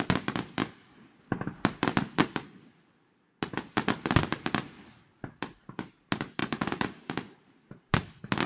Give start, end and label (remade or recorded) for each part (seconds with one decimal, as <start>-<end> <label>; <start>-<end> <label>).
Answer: 0.0-6.4 recorded; 6.4-7.0 remade; 7.0-8.5 recorded